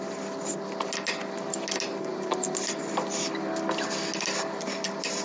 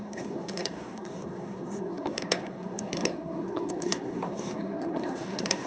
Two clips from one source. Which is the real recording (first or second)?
first